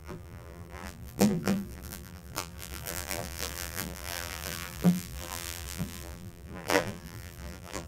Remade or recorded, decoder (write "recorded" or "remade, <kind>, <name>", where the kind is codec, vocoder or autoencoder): remade, vocoder, BigVGAN v2